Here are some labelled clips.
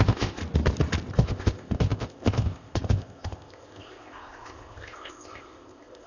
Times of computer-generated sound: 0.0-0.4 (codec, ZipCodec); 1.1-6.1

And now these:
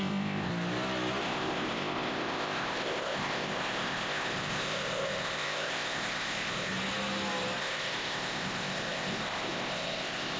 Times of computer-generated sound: 0.0-0.5 (codec, ZipCodec); 1.2-6.7; 7.6-10.4

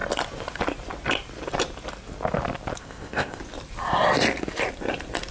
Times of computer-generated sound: 2.8-3.4 (codec, ZipCodec)

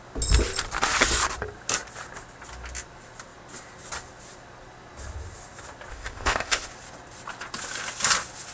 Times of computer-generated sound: 5.9-6.7 (codec, ZipCodec)

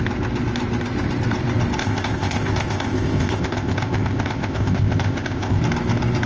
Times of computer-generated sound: 1.8-5.6 (codec, ZipCodec)

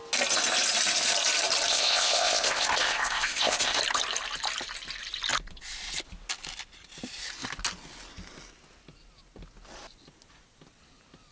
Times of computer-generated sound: 1.7-3.8 (codec, ZipCodec)

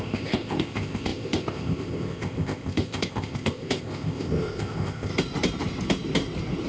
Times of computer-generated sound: 0.0-5.1 (codec, ZipCodec)

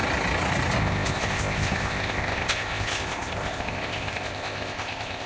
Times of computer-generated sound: 0.8-5.3 (codec, ZipCodec)